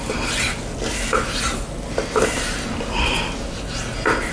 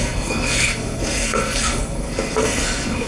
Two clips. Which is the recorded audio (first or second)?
first